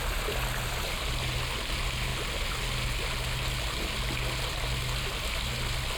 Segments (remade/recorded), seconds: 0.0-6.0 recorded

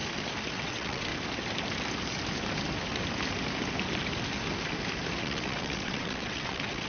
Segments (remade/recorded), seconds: 0.0-0.5 recorded; 0.5-1.1 remade; 1.1-5.2 recorded; 5.2-6.9 remade

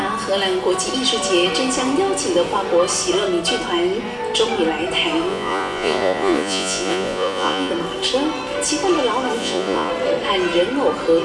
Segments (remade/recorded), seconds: 0.0-5.3 recorded; 5.3-7.7 remade; 7.7-9.4 recorded; 9.4-9.9 remade; 9.9-11.2 recorded

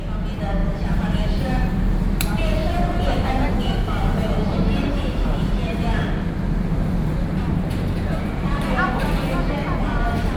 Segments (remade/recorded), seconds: 0.0-0.6 recorded; 0.6-1.7 remade; 1.7-2.6 recorded; 2.6-5.5 remade; 5.5-7.1 recorded; 7.1-8.6 remade; 8.6-10.4 recorded

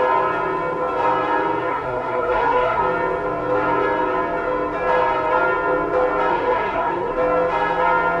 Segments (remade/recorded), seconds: 0.0-1.7 recorded; 1.7-2.8 remade; 2.8-6.3 recorded; 6.3-7.1 remade; 7.1-8.2 recorded